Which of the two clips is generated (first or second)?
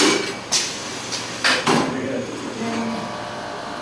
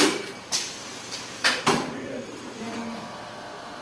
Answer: second